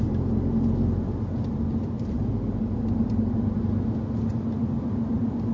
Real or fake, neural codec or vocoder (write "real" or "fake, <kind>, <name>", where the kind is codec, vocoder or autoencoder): real